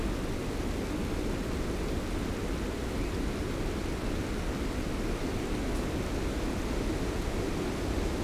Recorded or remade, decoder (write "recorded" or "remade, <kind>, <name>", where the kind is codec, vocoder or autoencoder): recorded